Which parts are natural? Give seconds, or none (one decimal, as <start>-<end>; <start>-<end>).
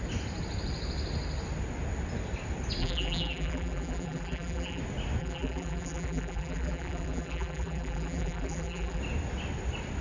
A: 0.0-2.8; 4.8-5.2; 9.0-10.0